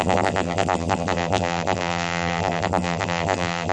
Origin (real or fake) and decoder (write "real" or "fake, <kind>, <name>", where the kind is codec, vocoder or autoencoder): fake, vocoder, BigVGAN v2